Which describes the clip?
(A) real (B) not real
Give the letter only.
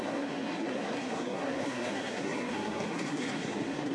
B